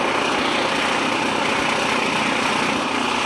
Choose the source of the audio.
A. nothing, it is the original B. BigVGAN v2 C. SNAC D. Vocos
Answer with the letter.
A